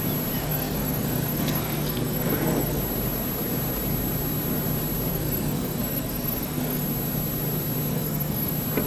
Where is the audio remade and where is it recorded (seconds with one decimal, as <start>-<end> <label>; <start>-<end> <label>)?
0.0-0.4 recorded; 0.4-2.8 remade; 2.8-5.1 recorded; 5.1-6.8 remade; 6.8-7.9 recorded; 7.9-8.5 remade; 8.5-8.9 recorded

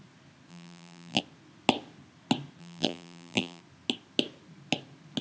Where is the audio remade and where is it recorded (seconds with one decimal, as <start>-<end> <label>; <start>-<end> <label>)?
0.0-0.5 recorded; 0.5-1.2 remade; 1.2-2.6 recorded; 2.6-3.6 remade; 3.6-5.2 recorded

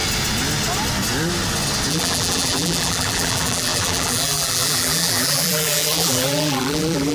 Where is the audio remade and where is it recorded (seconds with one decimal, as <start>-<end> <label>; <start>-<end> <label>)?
0.0-1.9 recorded; 1.9-7.1 remade

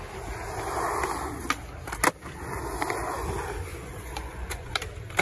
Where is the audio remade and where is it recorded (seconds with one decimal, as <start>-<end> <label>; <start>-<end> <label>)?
0.0-3.7 recorded; 3.7-4.7 remade; 4.7-5.2 recorded

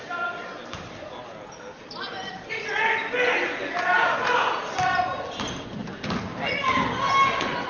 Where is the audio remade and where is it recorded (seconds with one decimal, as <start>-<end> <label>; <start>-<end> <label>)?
0.0-7.7 recorded

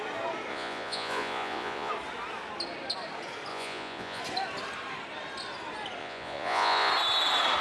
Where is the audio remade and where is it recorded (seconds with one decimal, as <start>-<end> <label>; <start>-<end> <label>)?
0.0-0.5 recorded; 0.5-1.9 remade; 1.9-3.5 recorded; 3.5-4.2 remade; 4.2-6.0 recorded; 6.0-6.9 remade; 6.9-7.6 recorded